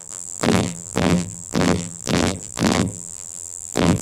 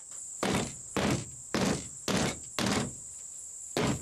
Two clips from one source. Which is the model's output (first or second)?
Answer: first